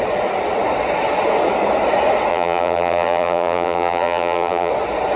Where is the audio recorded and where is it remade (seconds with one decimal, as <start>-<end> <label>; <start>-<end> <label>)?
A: 0.0-2.3 recorded; 2.3-4.7 remade; 4.7-5.2 recorded